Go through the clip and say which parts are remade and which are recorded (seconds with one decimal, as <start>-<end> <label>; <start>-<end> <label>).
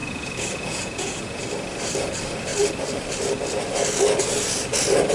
0.0-1.4 remade; 1.4-5.1 recorded